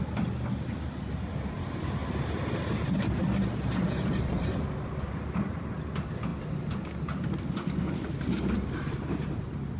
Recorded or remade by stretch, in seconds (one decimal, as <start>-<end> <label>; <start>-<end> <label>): 0.0-9.8 recorded